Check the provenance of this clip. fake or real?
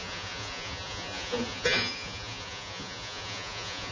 fake